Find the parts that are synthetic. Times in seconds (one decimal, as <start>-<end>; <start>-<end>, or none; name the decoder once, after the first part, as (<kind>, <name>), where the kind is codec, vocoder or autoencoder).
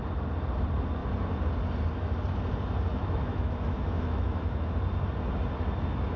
2.9-4.7 (autoencoder, DAC-VAE)